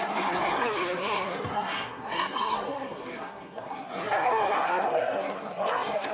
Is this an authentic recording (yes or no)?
no